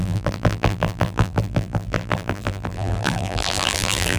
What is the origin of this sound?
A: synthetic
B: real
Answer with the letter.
A